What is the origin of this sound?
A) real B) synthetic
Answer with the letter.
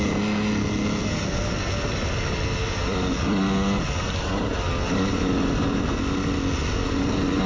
A